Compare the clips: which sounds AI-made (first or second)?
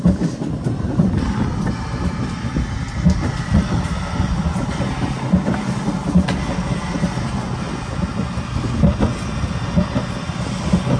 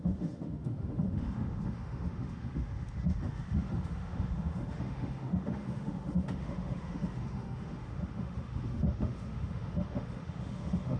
second